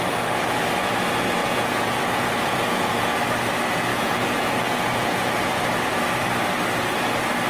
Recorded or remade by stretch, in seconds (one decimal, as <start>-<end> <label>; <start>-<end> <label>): 0.0-1.4 recorded; 1.4-3.1 remade; 3.1-3.9 recorded; 3.9-5.6 remade; 5.6-7.5 recorded